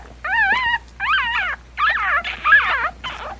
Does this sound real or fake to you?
real